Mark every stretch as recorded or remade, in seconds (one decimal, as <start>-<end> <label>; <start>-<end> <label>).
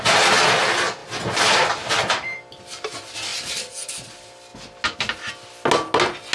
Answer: 0.0-1.0 recorded; 1.0-2.0 remade; 2.0-3.3 recorded; 3.3-4.1 remade; 4.1-6.3 recorded